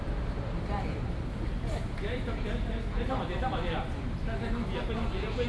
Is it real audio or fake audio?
real